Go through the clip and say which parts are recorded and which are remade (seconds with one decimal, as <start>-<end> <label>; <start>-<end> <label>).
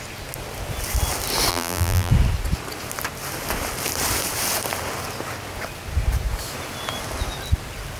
0.0-1.5 recorded; 1.5-2.1 remade; 2.1-8.0 recorded